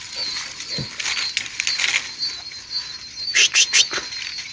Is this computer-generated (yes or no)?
no